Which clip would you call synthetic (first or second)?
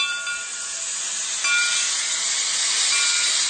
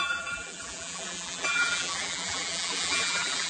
second